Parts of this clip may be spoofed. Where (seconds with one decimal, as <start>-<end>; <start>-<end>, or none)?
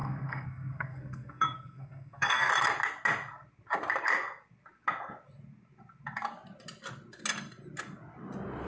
0.0-2.5